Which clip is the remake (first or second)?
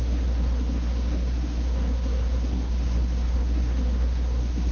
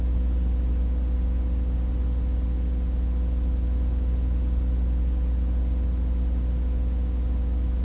first